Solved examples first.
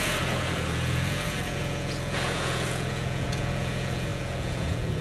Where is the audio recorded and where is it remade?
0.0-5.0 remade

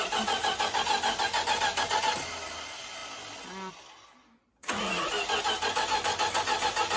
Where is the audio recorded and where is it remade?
0.0-4.6 recorded; 4.6-5.1 remade; 5.1-7.0 recorded

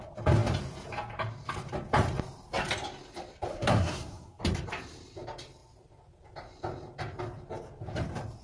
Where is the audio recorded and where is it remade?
0.0-3.5 recorded; 3.5-4.4 remade; 4.4-8.4 recorded

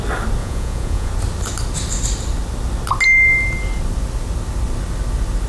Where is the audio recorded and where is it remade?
0.0-0.4 recorded; 0.4-1.1 remade; 1.1-5.5 recorded

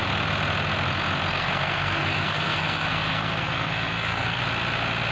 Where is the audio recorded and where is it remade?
0.0-1.3 recorded; 1.3-4.4 remade; 4.4-5.1 recorded

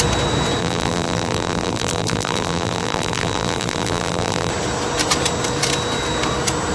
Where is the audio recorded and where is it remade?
0.0-0.6 recorded; 0.6-4.5 remade; 4.5-6.7 recorded